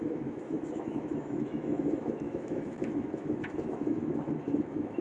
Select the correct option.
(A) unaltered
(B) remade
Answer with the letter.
B